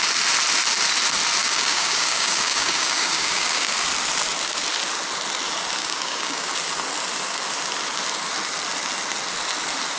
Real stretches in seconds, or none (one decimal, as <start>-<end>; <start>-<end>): 0.0-1.4; 3.7-5.8; 6.5-10.0